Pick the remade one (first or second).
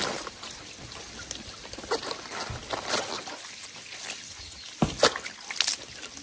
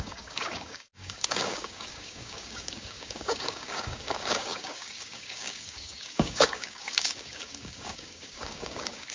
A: second